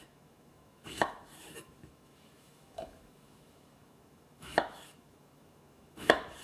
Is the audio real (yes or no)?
no